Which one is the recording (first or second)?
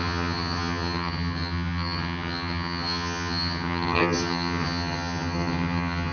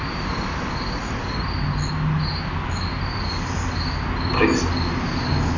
second